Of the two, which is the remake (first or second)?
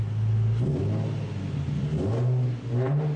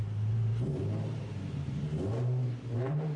second